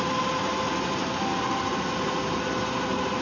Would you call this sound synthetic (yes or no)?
no